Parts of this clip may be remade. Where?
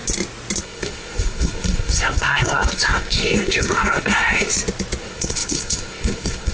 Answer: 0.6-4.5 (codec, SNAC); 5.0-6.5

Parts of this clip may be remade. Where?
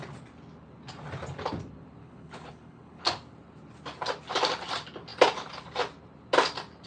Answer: 2.0-3.0 (codec, HILCodec)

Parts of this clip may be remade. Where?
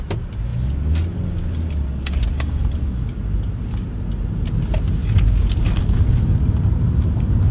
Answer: none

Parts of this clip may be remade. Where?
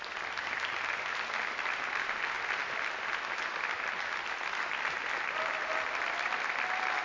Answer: none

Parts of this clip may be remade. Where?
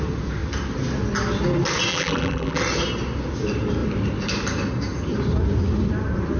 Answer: 1.9-2.6 (vocoder, BigVGAN v2)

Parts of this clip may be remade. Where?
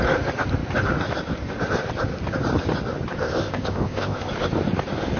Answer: 3.2-4.3 (codec, ZipCodec)